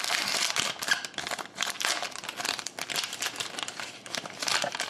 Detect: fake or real real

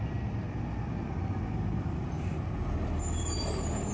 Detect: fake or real real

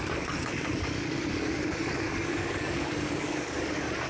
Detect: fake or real fake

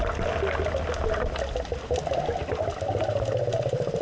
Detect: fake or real real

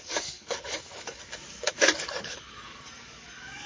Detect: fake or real fake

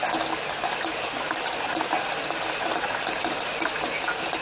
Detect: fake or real real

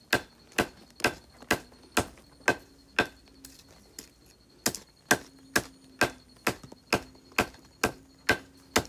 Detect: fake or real real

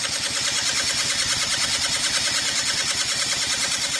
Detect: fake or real real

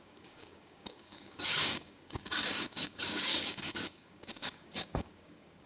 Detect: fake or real fake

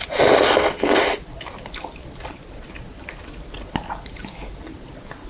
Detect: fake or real real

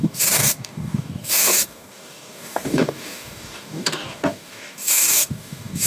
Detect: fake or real fake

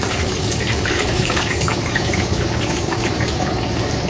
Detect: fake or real fake